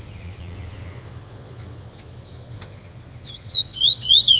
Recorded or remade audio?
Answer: remade